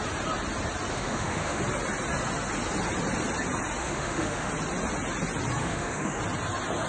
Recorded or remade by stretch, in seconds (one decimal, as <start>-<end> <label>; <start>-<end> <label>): 0.0-0.9 recorded; 0.9-1.6 remade; 1.6-3.8 recorded; 3.8-4.5 remade; 4.5-5.6 recorded; 5.6-6.2 remade; 6.2-6.9 recorded